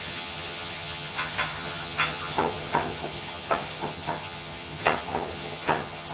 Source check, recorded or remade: remade